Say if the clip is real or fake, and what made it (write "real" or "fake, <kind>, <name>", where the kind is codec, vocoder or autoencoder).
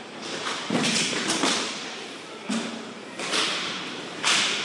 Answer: fake, vocoder, BigVGAN v2